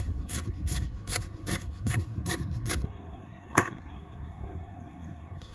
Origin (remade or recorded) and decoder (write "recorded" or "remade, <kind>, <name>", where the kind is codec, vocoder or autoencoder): remade, codec, SNAC